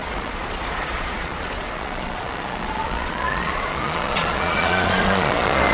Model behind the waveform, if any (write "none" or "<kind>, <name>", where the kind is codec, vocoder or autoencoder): vocoder, Vocos